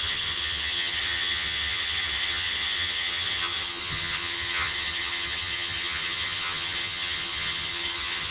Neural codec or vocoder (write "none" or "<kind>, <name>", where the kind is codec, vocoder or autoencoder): vocoder, HiFi-GAN